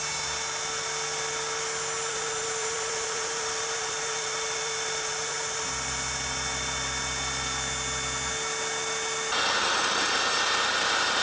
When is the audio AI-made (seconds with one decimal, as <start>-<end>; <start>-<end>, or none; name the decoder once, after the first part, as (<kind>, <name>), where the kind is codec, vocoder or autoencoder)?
2.1-5.6 (vocoder, BigVGAN v2)